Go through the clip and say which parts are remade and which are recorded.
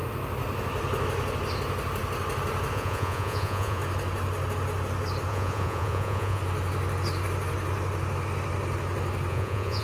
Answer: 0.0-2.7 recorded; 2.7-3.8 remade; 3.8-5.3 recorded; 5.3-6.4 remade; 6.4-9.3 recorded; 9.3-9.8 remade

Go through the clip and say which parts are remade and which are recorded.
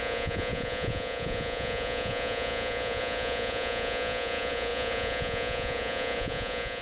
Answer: 0.0-6.8 remade